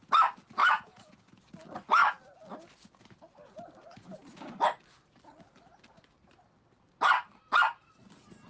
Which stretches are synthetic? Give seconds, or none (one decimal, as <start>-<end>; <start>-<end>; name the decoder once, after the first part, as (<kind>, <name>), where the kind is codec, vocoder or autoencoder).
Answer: 0.6-1.4 (vocoder, Vocos)